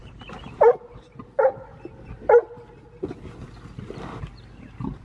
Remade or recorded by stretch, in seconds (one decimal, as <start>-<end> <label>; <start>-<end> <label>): 0.0-1.7 remade; 1.7-4.1 recorded; 4.1-5.0 remade